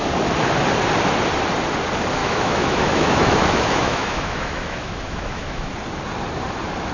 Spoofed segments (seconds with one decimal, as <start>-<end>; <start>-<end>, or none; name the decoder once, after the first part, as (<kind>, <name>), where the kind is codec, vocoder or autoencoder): 2.2-5.7 (autoencoder, DAC-VAE)